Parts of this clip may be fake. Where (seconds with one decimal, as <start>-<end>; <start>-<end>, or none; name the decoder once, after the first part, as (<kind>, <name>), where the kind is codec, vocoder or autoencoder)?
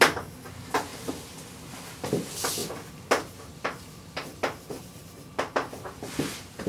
none